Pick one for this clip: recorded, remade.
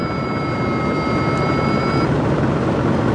recorded